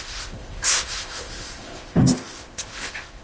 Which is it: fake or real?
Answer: fake